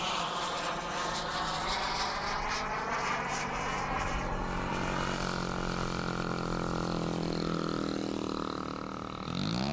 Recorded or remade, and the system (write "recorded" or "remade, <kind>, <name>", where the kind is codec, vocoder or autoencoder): recorded